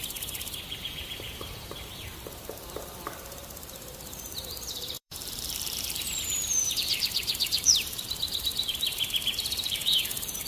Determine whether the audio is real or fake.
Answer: fake